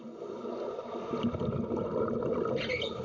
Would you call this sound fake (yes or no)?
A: no